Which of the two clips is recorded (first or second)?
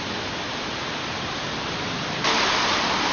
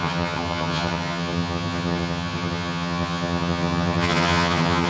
first